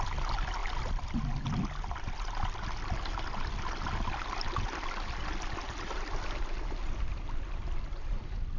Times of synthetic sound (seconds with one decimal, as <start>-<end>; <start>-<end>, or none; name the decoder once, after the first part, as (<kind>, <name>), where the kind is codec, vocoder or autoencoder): none